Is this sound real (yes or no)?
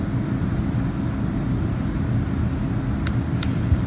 yes